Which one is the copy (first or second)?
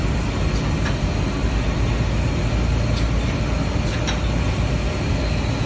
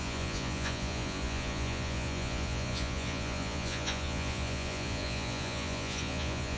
second